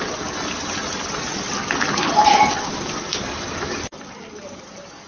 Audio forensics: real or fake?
real